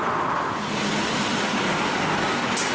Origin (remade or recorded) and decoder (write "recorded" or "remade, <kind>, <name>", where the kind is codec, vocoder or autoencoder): recorded